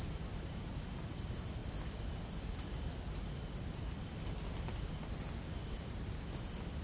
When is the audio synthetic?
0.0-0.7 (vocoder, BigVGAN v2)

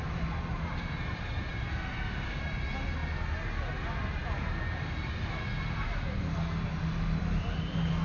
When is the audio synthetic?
none

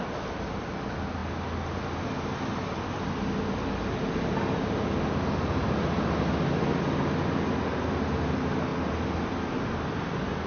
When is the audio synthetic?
none

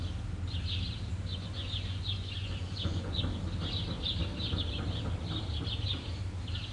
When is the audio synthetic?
1.3-3.2 (vocoder, Vocos)

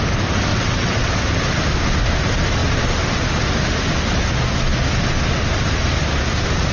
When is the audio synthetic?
0.5-1.2 (vocoder, WaveNeXt)

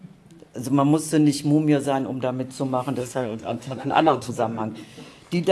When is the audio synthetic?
3.0-4.3 (codec, SNAC)